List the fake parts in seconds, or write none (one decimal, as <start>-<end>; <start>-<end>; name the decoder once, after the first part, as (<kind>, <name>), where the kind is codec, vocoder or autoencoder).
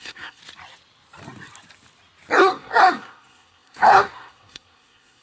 0.0-0.4 (codec, SNAC); 2.4-5.2